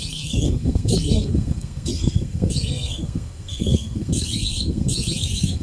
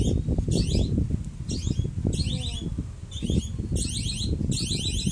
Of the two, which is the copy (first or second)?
first